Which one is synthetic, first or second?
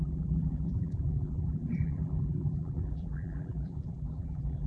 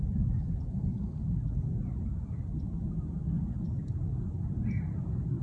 first